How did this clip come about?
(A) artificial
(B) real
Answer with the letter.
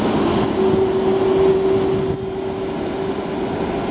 B